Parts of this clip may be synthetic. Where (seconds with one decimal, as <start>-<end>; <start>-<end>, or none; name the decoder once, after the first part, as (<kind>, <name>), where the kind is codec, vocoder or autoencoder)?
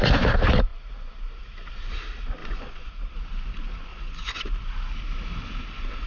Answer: 2.4-2.9 (vocoder, Vocos); 3.9-4.5